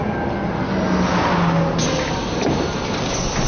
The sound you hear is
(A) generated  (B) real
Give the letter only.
B